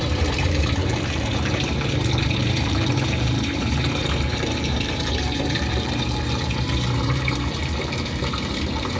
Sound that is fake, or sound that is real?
fake